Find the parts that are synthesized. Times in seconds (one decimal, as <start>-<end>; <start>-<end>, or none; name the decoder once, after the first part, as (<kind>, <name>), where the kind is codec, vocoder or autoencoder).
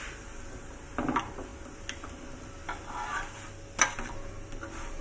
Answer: none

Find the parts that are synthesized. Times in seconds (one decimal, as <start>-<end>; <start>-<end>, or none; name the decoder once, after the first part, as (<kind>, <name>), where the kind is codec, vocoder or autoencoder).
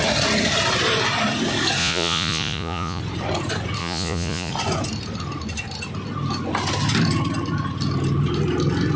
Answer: 1.8-3.0 (vocoder, Vocos); 3.8-4.5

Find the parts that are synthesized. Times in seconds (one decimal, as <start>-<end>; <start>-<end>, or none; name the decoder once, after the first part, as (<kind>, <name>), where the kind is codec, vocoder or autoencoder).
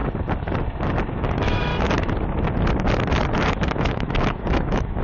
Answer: 1.1-1.7 (autoencoder, DAC-VAE); 3.7-5.0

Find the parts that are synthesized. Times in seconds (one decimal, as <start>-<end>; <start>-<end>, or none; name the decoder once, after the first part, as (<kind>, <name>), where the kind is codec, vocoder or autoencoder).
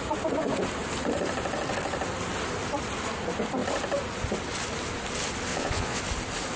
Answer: 5.5-6.0 (vocoder, Vocos)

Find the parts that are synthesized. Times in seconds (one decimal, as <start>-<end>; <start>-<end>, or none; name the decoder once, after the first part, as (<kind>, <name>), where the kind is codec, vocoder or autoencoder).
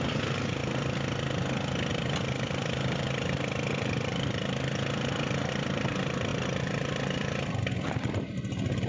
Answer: 0.6-1.3 (vocoder, BigVGAN v2); 1.9-5.5; 6.3-8.1